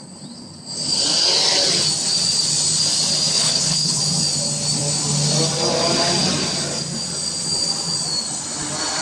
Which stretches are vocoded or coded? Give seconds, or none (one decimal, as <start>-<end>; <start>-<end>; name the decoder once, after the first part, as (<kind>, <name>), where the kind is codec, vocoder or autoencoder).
3.3-4.0 (codec, HILCodec)